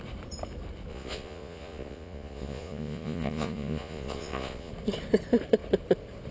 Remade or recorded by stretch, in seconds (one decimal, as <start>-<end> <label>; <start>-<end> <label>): 0.0-0.9 recorded; 0.9-4.7 remade; 4.7-6.3 recorded

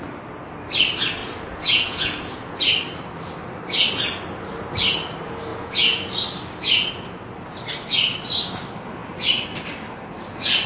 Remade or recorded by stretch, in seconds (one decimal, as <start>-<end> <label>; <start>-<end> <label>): 0.0-1.2 recorded; 1.2-2.6 remade; 2.6-5.5 recorded; 5.5-6.1 remade; 6.1-10.7 recorded